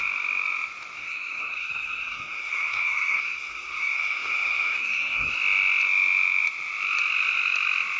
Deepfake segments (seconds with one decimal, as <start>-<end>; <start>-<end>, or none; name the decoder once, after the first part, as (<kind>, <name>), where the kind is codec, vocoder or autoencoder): 1.0-5.3 (codec, SNAC)